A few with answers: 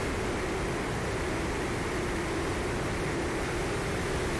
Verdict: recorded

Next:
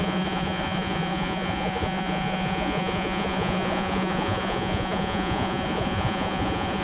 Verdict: remade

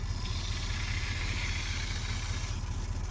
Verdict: recorded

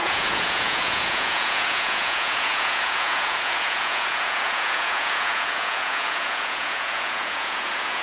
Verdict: remade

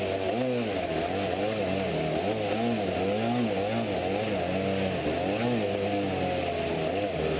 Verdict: recorded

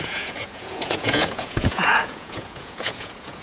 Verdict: remade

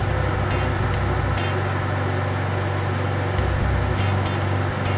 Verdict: recorded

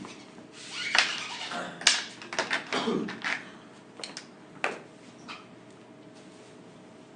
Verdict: recorded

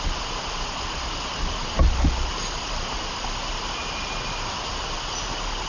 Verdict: recorded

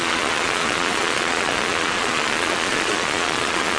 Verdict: remade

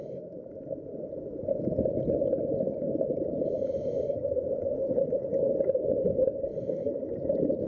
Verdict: recorded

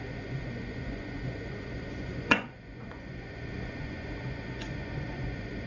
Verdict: remade